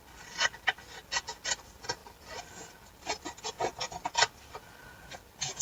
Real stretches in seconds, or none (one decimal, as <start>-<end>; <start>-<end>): 0.0-5.6